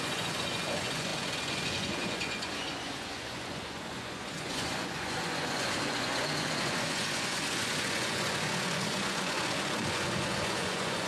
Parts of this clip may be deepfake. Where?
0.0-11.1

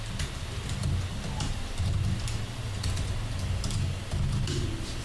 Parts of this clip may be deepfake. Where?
1.1-2.8